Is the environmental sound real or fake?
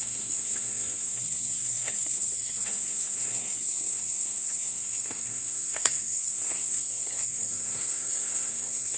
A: fake